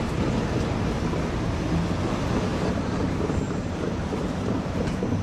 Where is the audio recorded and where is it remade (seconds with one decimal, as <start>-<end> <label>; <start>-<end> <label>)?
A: 0.0-2.5 recorded; 2.5-5.2 remade